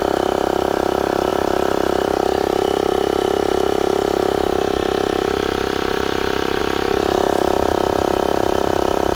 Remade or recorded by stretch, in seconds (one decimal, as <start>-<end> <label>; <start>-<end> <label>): 0.0-9.2 recorded